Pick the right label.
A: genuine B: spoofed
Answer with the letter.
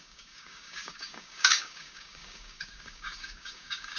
B